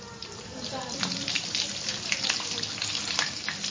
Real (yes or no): no